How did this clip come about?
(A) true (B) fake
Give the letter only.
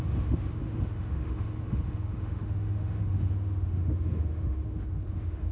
B